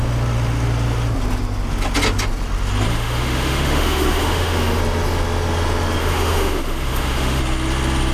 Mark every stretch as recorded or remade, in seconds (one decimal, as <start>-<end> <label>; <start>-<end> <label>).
0.0-2.9 recorded; 2.9-4.8 remade; 4.8-6.0 recorded; 6.0-7.4 remade; 7.4-8.1 recorded